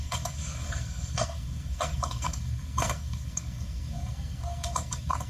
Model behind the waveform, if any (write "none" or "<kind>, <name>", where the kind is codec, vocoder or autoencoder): codec, SNAC